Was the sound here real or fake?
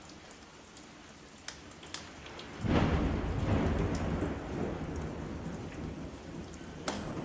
real